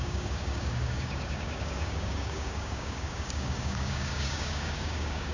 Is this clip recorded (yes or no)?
no